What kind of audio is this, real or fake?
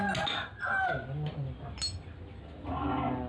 real